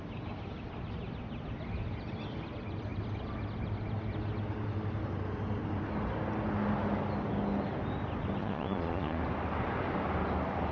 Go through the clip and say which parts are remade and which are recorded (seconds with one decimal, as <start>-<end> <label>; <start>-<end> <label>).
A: 0.0-8.4 recorded; 8.4-9.2 remade; 9.2-10.7 recorded